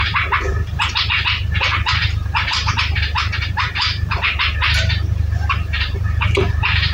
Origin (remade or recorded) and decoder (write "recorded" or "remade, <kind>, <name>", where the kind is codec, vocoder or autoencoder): remade, vocoder, BigVGAN v2